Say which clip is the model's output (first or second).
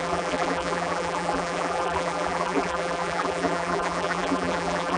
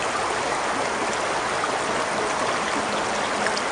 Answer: first